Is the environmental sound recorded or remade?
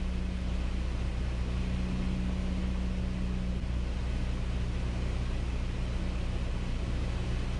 recorded